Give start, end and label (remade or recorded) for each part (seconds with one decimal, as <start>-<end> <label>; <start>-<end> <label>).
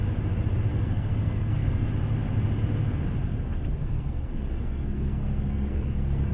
0.0-0.7 recorded; 0.7-1.9 remade; 1.9-3.8 recorded; 3.8-6.3 remade